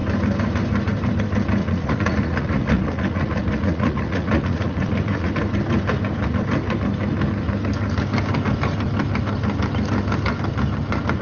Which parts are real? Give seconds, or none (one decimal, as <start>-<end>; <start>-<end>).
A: 0.0-1.6; 5.3-11.2